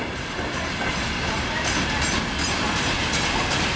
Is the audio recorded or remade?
recorded